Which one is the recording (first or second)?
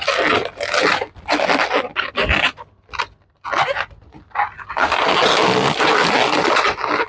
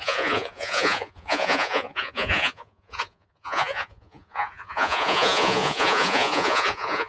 first